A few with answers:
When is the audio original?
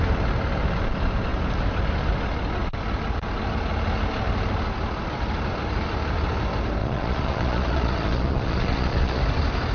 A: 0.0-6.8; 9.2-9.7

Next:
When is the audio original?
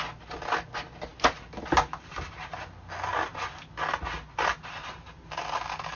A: 0.0-5.9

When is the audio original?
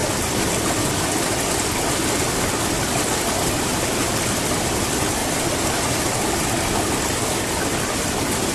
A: 0.0-8.5